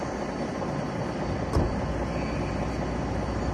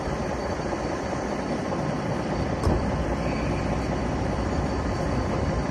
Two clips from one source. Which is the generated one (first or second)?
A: second